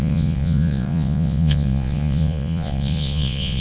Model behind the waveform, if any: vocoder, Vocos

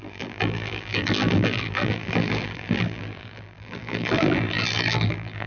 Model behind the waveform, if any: vocoder, BigVGAN v2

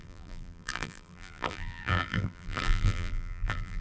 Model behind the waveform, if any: vocoder, BigVGAN v2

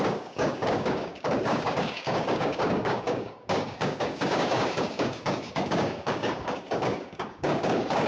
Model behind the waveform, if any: codec, DAC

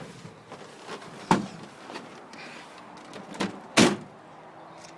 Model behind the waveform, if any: none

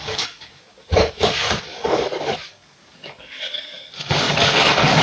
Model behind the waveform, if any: codec, DAC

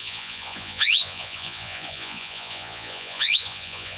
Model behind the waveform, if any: vocoder, Vocos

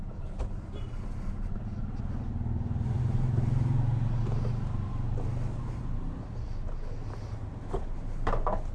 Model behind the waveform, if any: none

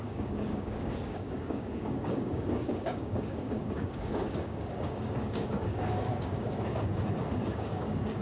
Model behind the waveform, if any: codec, DAC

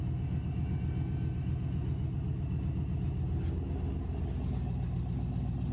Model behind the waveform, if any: none